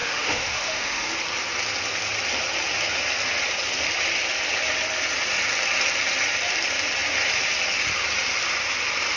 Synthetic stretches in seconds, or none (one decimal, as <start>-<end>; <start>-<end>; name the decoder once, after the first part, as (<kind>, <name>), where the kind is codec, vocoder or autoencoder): 0.0-1.1 (autoencoder, DAC-VAE)